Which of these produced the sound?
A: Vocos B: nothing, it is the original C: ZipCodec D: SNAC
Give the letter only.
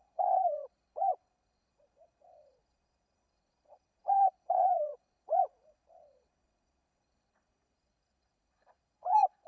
A